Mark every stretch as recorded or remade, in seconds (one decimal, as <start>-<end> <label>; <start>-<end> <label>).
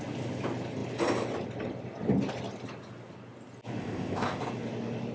0.0-3.8 recorded; 3.8-4.4 remade; 4.4-5.1 recorded